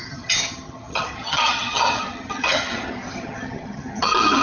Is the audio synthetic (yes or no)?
yes